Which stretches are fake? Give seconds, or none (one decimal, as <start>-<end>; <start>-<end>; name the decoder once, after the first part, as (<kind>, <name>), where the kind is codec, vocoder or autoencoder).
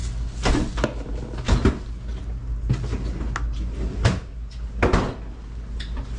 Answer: none